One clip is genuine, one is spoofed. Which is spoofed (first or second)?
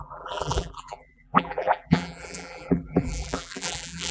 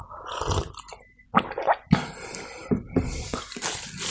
first